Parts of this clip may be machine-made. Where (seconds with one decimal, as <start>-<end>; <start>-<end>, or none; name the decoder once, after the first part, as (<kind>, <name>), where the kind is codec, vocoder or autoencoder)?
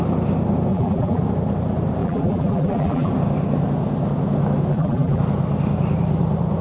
0.7-1.2 (vocoder, BigVGAN v2); 2.0-3.1; 4.7-5.2